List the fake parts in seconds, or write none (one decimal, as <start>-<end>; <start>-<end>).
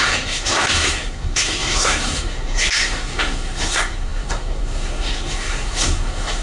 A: 0.0-6.4